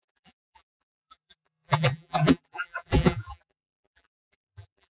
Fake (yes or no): yes